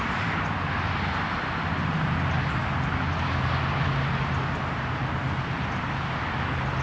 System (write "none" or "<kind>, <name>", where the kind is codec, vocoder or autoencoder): none